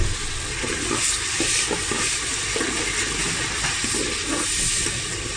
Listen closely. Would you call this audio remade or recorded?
recorded